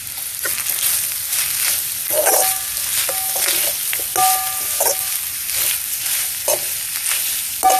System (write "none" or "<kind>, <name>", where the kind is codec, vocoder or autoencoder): none